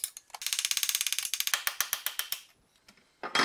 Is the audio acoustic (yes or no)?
yes